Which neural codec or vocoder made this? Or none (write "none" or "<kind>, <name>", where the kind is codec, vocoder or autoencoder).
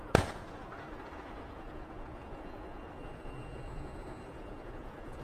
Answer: vocoder, Vocos